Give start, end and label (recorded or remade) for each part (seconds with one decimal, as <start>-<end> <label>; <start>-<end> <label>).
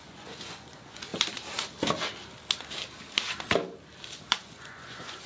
0.0-1.1 remade; 1.1-4.3 recorded; 4.3-5.3 remade